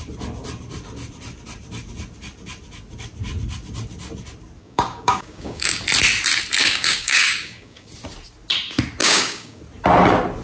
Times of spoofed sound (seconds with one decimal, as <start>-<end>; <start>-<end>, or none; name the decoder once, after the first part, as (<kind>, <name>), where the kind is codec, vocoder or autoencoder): 4.6-5.8 (codec, DAC); 6.6-7.9; 9.0-9.6